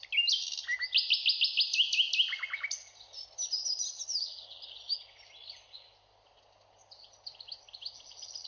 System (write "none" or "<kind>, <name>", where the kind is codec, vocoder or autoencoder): none